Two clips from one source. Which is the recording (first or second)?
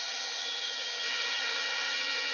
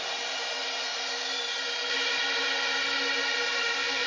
second